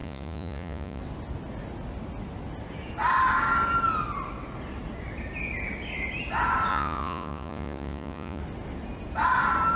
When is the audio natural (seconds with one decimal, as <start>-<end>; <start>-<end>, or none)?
1.0-6.7; 8.4-9.8